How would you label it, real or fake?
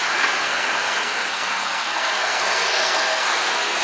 fake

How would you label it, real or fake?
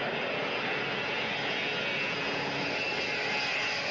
real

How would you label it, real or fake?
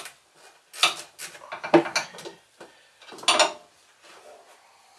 real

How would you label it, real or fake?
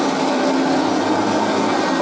real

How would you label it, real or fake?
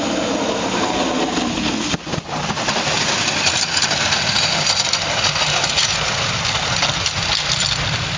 real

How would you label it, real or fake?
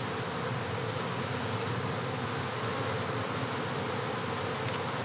real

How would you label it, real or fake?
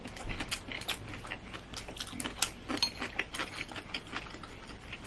real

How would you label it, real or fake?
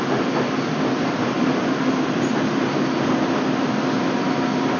real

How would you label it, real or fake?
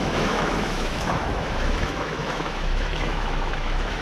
fake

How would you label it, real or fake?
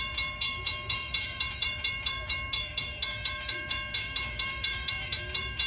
fake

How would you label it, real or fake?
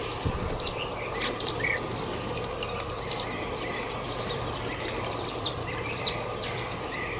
fake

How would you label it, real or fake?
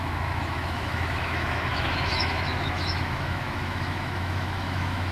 fake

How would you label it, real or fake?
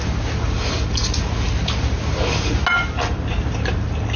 real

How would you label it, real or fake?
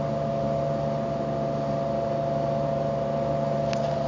real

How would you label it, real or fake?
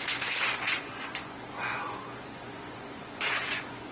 fake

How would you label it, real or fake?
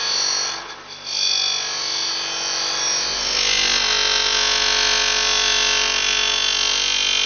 real